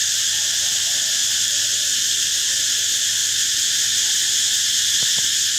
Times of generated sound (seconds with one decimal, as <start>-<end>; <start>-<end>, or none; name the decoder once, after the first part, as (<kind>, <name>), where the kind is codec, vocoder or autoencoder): 0.0-0.6 (vocoder, BigVGAN v2); 1.2-2.2